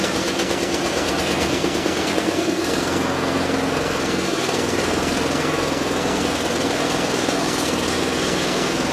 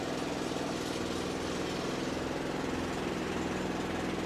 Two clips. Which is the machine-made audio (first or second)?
first